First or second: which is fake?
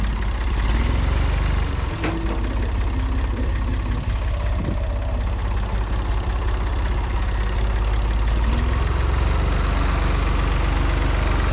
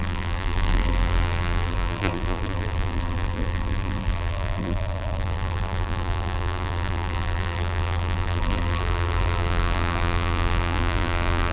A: second